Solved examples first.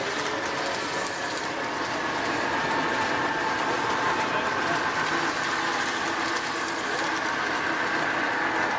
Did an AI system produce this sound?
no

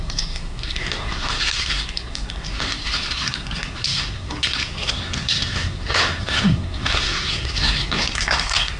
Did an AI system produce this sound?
yes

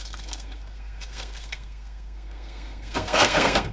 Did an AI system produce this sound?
yes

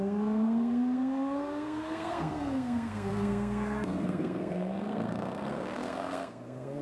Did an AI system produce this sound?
yes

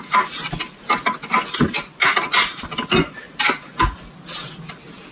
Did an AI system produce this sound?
no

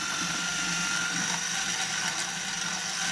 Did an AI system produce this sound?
no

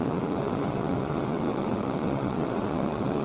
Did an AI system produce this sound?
yes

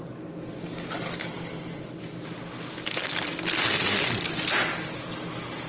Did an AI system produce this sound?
no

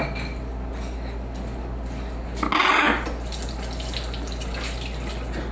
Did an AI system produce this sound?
no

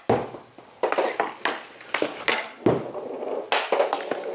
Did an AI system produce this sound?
no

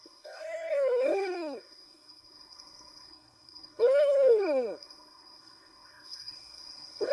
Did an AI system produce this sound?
yes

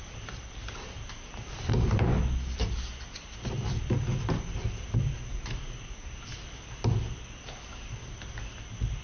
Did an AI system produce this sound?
no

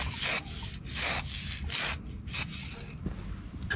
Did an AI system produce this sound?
no